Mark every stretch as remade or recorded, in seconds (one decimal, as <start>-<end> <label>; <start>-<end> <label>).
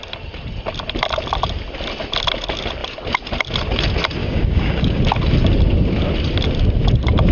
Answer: 0.0-4.2 recorded; 4.2-5.0 remade; 5.0-7.3 recorded